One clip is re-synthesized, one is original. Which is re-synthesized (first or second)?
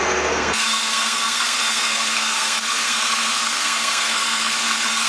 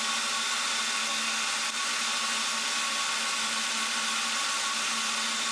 first